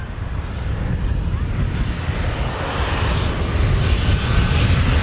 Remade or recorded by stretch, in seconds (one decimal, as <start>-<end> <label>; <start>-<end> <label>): 0.0-5.0 recorded